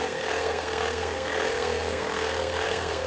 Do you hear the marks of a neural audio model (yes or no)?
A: yes